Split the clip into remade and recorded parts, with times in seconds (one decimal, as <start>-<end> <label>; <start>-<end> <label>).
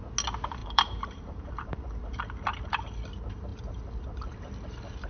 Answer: 0.0-0.6 recorded; 0.6-1.7 remade; 1.7-5.1 recorded